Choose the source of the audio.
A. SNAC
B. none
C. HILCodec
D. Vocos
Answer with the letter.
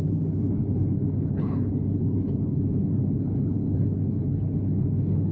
C